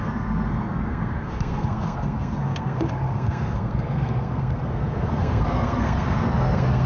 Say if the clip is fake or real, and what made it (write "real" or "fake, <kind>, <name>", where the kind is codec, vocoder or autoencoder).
fake, codec, SNAC